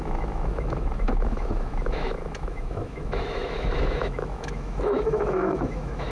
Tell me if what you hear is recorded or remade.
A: remade